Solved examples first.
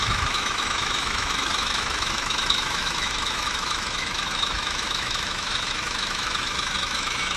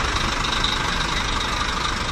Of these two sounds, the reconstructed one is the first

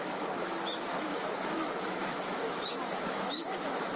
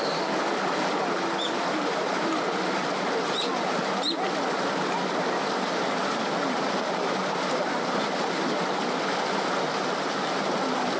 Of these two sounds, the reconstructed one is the first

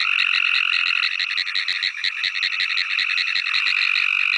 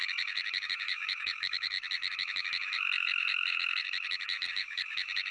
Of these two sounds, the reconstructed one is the second